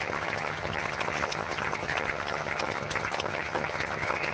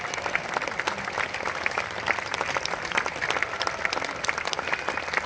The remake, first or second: first